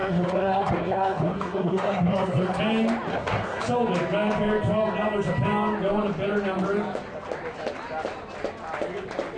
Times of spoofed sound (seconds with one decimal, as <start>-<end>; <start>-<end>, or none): 0.0-2.6; 3.1-3.6